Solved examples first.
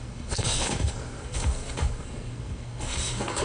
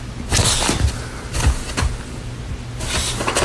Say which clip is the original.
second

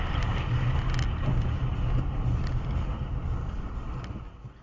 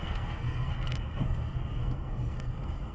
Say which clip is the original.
first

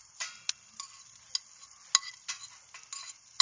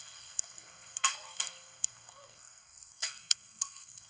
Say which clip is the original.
first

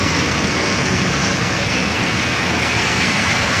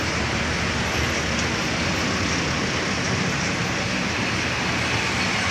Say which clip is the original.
second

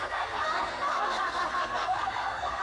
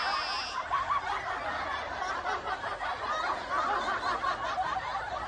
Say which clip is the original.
second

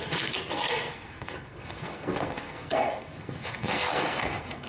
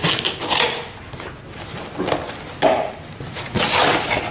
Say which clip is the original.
second